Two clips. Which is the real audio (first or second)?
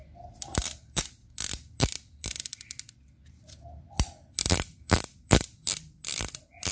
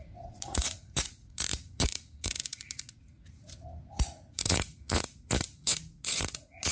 first